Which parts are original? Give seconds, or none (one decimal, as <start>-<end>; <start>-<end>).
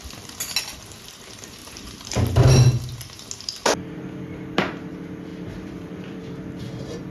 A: 0.0-5.3; 6.2-7.1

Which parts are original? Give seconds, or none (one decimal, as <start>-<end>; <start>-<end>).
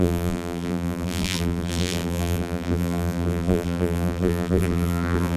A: none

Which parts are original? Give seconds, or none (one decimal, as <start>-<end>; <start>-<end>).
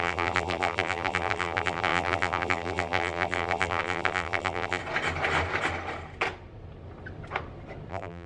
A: 4.8-7.9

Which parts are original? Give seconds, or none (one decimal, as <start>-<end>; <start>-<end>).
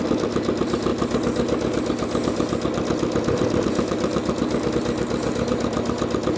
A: 0.0-6.4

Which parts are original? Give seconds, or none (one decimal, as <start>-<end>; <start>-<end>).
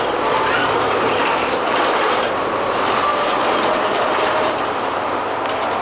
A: 0.0-0.6; 1.8-3.1; 5.3-5.8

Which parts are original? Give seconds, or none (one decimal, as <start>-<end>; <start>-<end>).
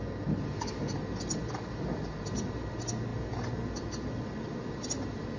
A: 0.0-5.4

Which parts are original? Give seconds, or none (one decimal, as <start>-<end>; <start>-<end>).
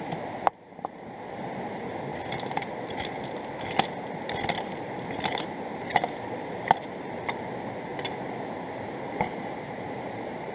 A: 2.1-4.5; 7.9-9.6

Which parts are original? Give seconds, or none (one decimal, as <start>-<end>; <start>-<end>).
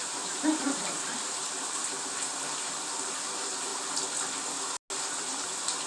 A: 1.8-2.9; 3.7-5.1